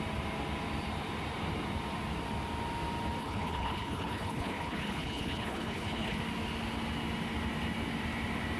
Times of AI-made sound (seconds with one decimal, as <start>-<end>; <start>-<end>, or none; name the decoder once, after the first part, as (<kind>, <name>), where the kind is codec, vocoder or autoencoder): 3.2-6.2 (codec, HILCodec)